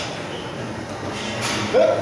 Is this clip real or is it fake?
real